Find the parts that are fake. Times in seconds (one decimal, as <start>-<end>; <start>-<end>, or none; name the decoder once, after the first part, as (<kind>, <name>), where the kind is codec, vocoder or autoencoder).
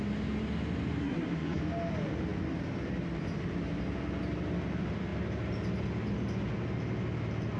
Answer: 1.0-1.6 (codec, SNAC)